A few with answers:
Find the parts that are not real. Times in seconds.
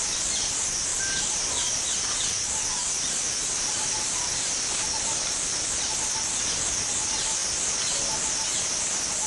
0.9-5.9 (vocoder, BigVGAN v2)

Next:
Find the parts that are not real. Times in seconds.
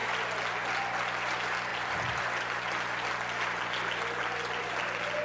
none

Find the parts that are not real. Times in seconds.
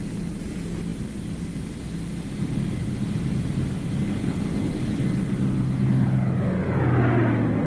2.8-3.9 (vocoder, BigVGAN v2)